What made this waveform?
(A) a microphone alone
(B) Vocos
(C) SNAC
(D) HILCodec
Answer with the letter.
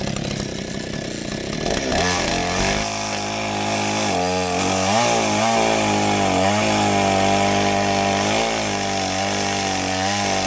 A